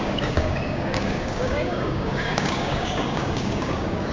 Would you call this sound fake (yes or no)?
yes